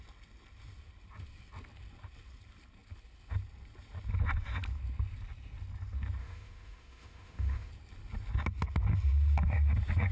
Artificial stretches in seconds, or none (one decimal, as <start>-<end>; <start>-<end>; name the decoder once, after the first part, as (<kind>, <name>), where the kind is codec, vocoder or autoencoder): 6.2-7.7 (autoencoder, DAC-VAE)